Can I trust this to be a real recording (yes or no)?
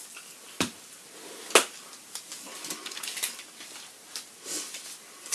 yes